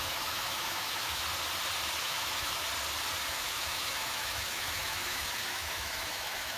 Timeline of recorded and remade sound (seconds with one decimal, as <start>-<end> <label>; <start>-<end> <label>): 0.0-1.2 remade; 1.2-2.0 recorded; 2.0-2.6 remade; 2.6-3.3 recorded; 3.3-6.6 remade